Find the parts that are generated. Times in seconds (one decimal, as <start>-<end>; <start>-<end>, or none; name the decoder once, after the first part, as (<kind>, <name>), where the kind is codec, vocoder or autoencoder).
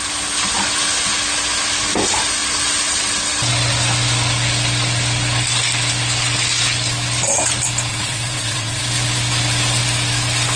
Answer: 7.9-8.8 (vocoder, WaveNeXt)